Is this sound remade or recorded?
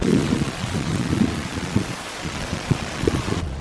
remade